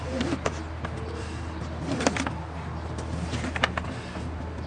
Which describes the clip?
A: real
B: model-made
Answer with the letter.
A